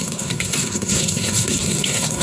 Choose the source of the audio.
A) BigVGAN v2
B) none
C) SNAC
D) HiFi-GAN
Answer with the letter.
C